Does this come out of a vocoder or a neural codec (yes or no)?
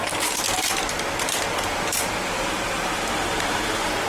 yes